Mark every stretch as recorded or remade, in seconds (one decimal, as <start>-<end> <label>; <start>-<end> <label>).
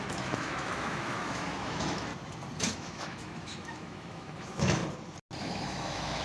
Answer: 0.0-2.1 remade; 2.1-2.6 recorded; 2.6-4.8 remade; 4.8-5.4 recorded; 5.4-6.2 remade